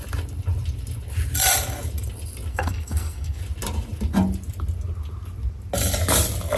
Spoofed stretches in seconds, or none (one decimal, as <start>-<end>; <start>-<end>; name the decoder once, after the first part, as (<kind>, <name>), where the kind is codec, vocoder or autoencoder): 2.5-3.4 (codec, SNAC)